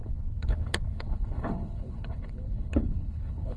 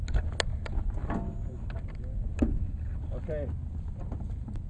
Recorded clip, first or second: second